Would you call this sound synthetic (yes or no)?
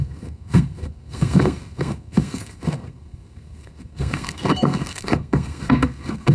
yes